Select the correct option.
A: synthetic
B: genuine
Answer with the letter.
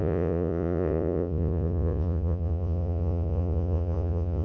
A